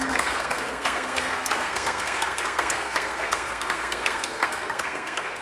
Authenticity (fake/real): fake